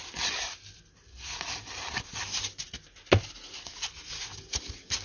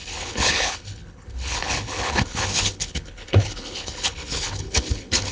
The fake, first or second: second